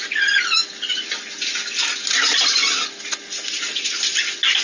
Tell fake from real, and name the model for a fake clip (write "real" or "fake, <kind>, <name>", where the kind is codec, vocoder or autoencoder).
real